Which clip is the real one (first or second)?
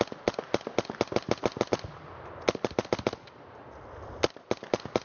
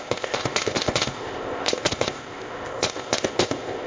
first